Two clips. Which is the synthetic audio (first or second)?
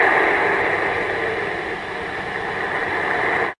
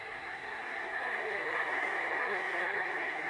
second